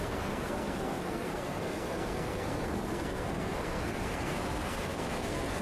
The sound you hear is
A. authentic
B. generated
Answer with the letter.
B